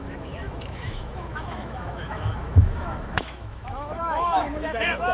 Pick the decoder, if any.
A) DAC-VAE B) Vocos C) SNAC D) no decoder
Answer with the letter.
A